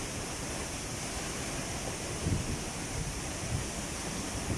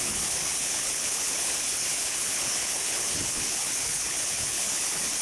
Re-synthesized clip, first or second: second